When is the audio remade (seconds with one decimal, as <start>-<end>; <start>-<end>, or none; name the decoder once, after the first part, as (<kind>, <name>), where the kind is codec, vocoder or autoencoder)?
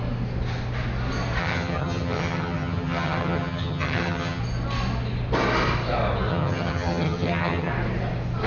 1.4-4.4 (vocoder, HiFi-GAN); 6.3-7.7